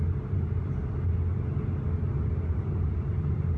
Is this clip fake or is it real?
real